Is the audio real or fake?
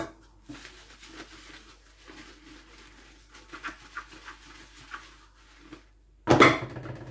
real